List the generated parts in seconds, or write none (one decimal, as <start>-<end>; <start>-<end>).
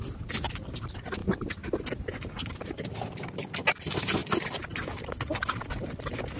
none